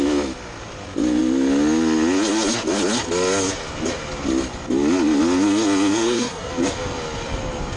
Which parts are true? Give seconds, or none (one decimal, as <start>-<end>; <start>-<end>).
0.0-5.9; 6.5-7.8

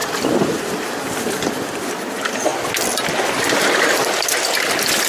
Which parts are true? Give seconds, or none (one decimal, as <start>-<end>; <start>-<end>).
0.9-5.1